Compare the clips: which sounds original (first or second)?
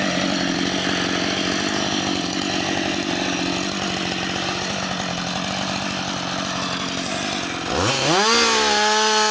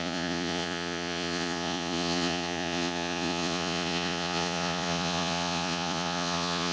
first